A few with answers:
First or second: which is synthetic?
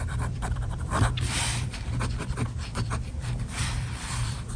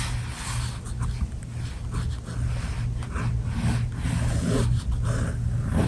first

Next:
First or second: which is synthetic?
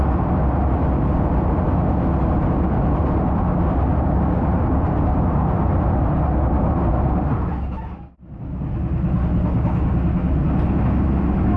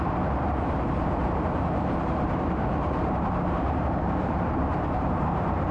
second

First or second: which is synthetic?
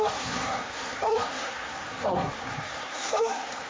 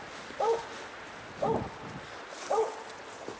first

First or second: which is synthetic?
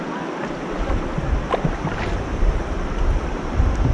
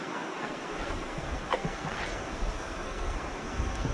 second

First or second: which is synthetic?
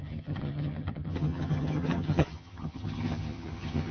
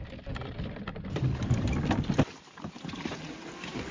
first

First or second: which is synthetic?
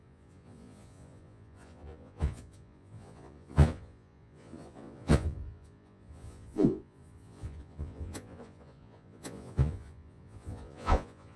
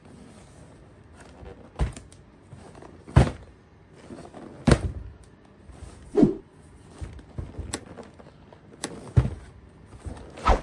first